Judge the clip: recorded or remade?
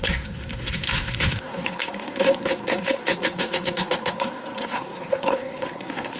remade